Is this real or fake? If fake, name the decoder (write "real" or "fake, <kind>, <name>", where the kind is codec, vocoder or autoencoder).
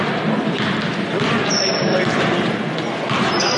real